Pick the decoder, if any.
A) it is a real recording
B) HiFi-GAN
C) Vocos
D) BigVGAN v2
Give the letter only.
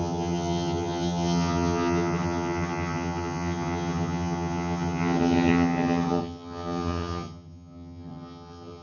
B